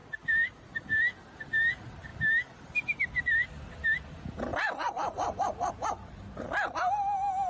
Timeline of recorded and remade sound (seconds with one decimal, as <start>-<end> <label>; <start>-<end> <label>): 0.0-0.7 recorded; 0.7-7.5 remade